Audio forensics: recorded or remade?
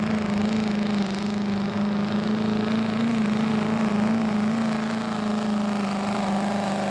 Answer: recorded